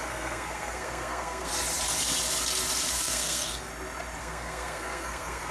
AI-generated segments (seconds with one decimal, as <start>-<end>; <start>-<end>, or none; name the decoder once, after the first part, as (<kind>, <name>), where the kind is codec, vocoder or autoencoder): 0.0-1.5 (codec, SNAC); 2.9-3.7; 4.2-5.5